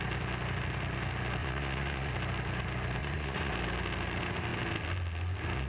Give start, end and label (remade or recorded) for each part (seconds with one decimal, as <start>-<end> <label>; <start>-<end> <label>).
0.0-1.4 recorded; 1.4-2.1 remade; 2.1-3.0 recorded; 3.0-3.5 remade; 3.5-5.7 recorded